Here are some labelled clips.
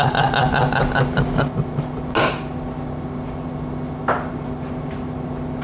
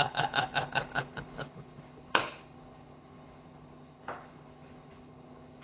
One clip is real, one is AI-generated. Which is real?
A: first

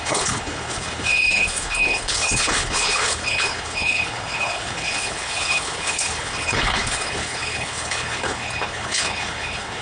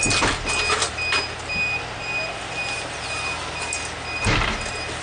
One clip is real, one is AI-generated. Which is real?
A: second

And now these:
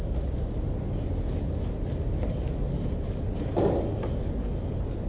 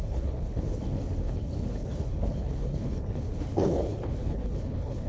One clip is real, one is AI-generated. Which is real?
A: first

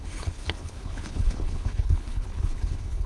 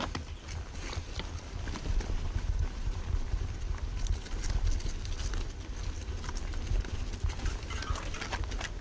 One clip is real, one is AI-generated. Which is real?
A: second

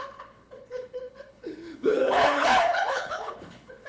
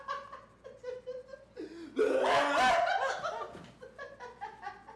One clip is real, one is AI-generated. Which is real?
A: second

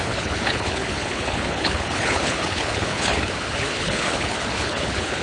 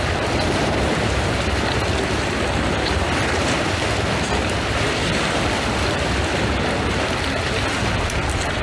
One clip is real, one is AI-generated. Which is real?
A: second